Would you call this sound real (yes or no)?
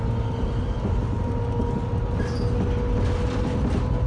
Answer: yes